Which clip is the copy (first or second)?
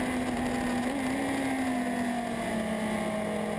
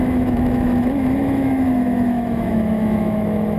second